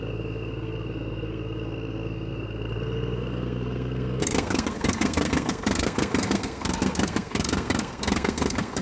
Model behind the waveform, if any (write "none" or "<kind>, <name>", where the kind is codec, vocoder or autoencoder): codec, SNAC